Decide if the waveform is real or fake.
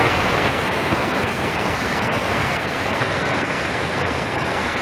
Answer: fake